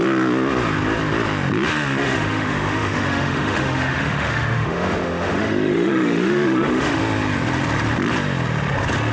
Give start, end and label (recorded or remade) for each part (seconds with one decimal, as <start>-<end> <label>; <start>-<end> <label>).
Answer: 0.0-2.0 recorded; 2.0-7.0 remade; 7.0-9.1 recorded